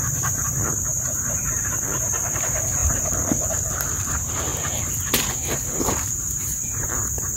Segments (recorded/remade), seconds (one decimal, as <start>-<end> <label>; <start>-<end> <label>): 0.0-4.5 remade; 4.5-5.8 recorded; 5.8-7.4 remade